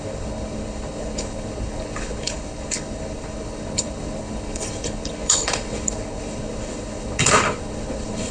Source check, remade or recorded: remade